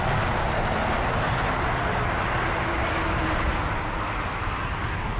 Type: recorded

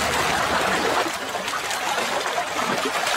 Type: recorded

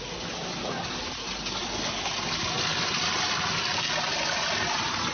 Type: recorded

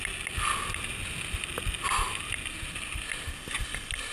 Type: recorded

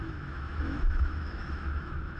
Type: remade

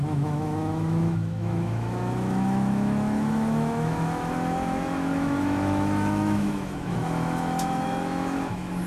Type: remade